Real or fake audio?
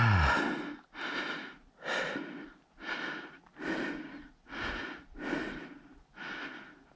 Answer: real